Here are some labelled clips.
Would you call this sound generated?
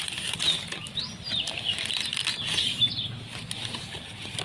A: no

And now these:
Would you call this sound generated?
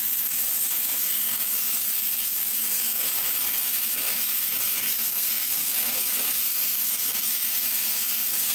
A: yes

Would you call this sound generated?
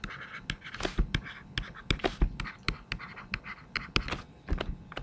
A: no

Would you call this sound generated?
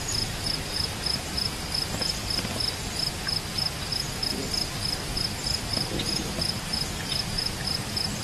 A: no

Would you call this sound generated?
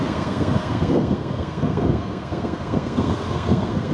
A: yes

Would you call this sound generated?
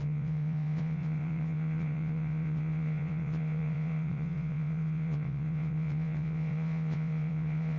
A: yes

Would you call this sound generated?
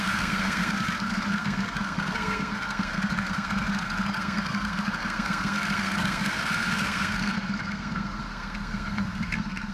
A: yes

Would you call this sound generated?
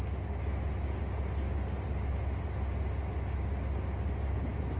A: no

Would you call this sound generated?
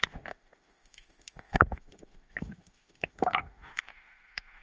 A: yes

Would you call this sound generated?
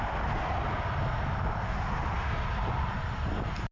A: no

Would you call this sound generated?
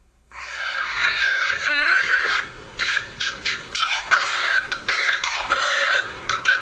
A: yes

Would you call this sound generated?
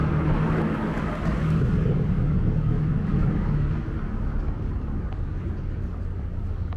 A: yes